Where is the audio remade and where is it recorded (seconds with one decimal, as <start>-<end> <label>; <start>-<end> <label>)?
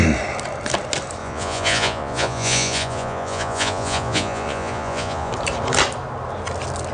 0.0-1.2 recorded; 1.2-5.3 remade; 5.3-6.9 recorded